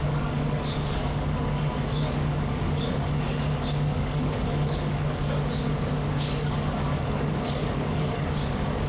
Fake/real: fake